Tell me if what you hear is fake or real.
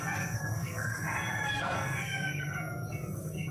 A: fake